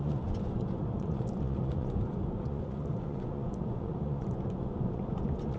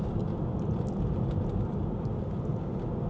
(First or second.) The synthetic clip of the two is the first